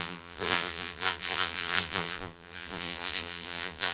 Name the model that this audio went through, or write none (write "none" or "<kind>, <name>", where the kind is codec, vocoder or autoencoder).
vocoder, BigVGAN v2